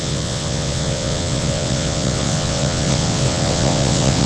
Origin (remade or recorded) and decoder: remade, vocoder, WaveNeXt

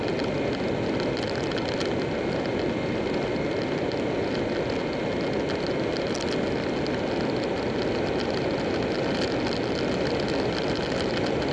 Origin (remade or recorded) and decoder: recorded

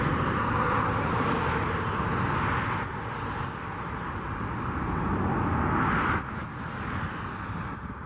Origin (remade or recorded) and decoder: recorded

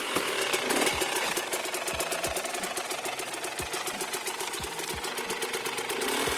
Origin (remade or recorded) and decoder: remade, vocoder, BigVGAN v2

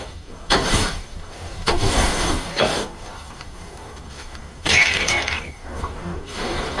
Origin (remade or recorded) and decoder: remade, codec, DAC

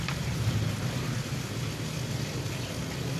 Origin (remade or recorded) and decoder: recorded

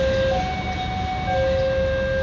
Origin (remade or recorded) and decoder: recorded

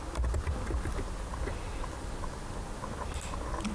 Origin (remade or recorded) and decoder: recorded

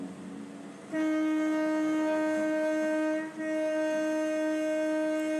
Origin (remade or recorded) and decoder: recorded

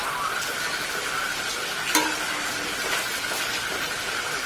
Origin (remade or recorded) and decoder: recorded